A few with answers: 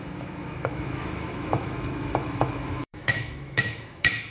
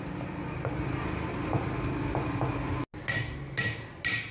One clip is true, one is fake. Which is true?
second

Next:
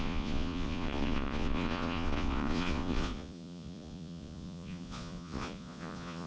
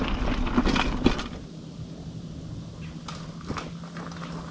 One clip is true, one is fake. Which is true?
second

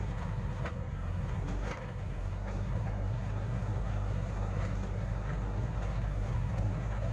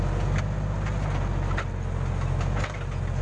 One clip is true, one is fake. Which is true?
second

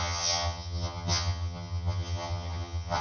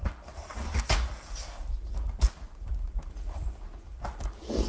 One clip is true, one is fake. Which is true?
second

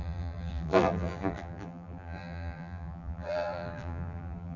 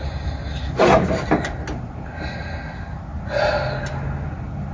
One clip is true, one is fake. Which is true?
second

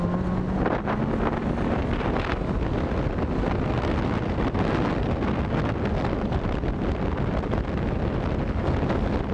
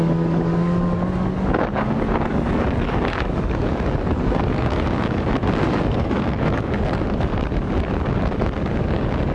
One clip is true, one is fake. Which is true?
first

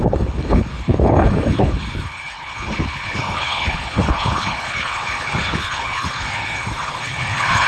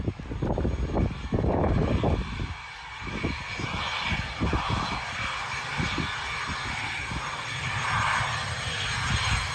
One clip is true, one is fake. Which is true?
second